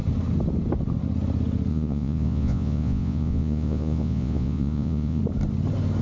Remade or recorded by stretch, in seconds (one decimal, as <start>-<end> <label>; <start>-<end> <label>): 0.0-1.7 recorded; 1.7-5.2 remade; 5.2-6.0 recorded